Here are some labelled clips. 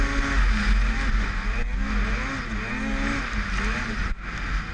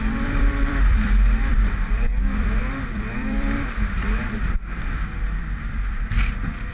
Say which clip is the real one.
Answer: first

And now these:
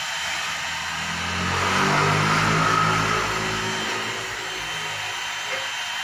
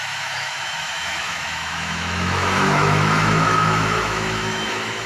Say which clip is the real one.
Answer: first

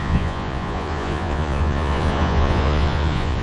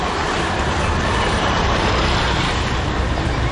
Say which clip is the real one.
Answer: second